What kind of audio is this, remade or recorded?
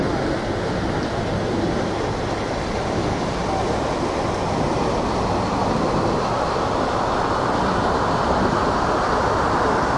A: recorded